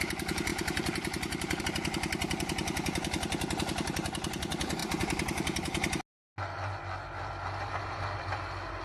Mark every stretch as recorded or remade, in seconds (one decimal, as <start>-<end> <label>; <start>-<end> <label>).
0.0-0.5 recorded; 0.5-1.6 remade; 1.6-8.8 recorded